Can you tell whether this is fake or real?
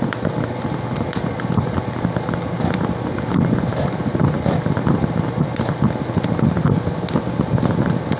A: real